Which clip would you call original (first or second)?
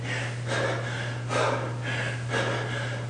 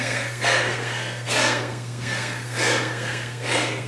first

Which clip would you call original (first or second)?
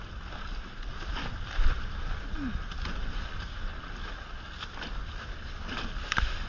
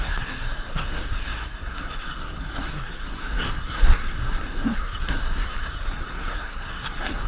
first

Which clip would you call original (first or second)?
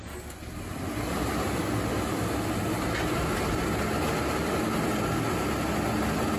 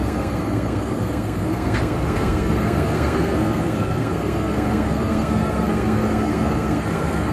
first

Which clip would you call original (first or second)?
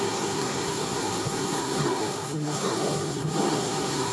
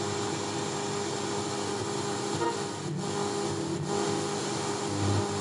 second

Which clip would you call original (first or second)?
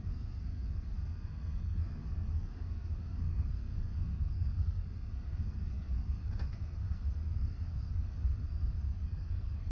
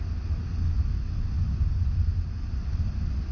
second